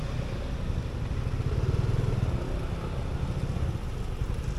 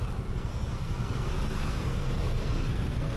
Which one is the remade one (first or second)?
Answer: second